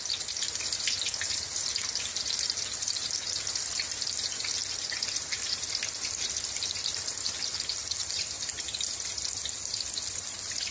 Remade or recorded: recorded